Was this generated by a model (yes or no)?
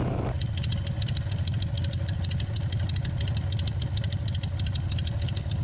no